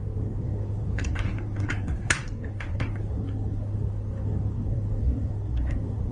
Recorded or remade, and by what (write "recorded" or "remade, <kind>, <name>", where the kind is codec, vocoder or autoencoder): remade, codec, SNAC